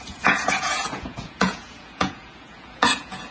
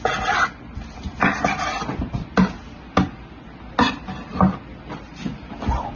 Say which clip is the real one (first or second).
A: second